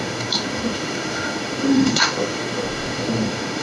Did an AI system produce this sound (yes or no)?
yes